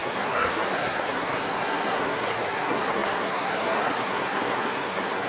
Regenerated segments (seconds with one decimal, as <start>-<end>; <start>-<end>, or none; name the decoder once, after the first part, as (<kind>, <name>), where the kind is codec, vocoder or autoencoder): 0.0-5.3 (codec, SNAC)